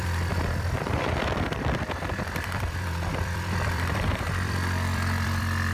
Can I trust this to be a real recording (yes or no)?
no